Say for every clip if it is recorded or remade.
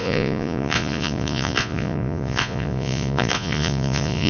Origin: remade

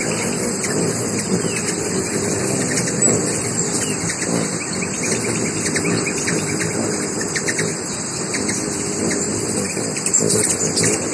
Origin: recorded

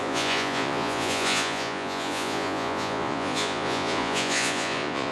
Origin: remade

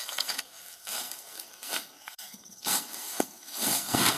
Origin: remade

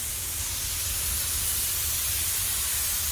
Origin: recorded